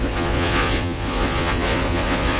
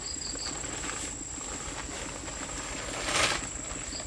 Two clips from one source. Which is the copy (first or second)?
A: first